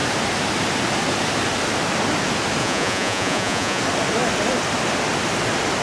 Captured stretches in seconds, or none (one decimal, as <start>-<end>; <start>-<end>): 0.0-2.6; 3.8-5.8